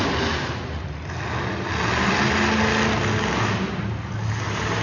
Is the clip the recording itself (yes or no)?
yes